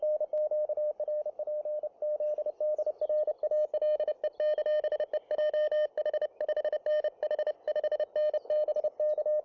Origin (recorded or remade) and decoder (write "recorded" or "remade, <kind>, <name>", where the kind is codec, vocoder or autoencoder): recorded